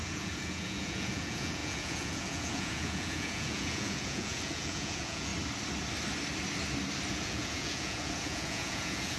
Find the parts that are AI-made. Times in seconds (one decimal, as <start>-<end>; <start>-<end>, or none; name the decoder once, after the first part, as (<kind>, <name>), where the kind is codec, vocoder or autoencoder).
0.0-5.3 (vocoder, Vocos); 7.1-9.2